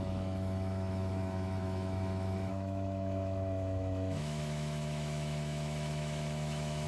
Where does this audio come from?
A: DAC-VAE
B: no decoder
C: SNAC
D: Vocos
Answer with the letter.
A